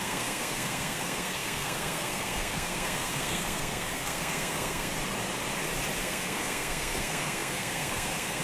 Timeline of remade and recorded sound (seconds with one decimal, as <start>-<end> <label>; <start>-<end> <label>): 0.0-4.9 remade; 4.9-6.0 recorded; 6.0-8.4 remade